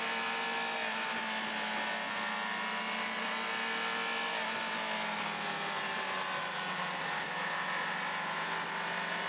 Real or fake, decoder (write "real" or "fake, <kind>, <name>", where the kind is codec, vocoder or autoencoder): real